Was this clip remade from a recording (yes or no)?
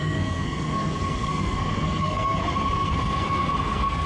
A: yes